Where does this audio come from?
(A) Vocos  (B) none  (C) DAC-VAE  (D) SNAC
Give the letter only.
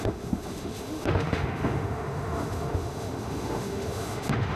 C